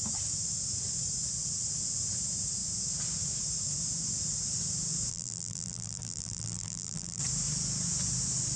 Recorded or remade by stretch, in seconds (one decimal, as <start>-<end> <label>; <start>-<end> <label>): 0.0-5.1 recorded; 5.1-7.2 remade; 7.2-8.6 recorded